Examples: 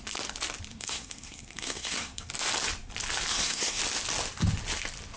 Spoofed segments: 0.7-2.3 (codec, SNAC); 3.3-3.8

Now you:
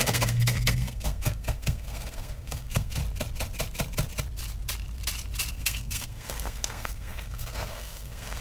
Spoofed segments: 0.0-3.0 (codec, SNAC); 5.5-8.4

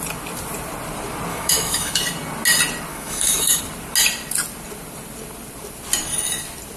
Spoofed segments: 1.3-2.0 (autoencoder, DAC-VAE); 2.9-3.6